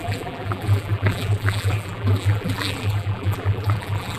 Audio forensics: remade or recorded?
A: remade